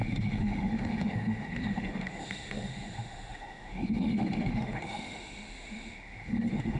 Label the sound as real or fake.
fake